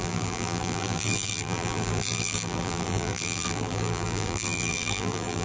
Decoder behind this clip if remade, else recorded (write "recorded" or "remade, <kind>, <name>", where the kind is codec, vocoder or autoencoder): remade, vocoder, BigVGAN v2